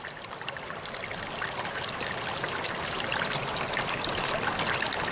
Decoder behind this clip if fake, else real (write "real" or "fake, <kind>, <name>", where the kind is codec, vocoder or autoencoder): real